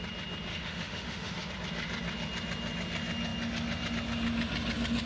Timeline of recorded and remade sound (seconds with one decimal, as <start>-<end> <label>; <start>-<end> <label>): 0.0-0.5 recorded; 0.5-1.5 remade; 1.5-5.1 recorded